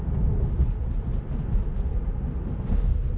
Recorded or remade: recorded